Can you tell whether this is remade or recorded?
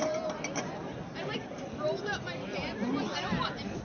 recorded